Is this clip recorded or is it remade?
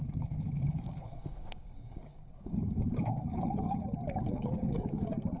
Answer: remade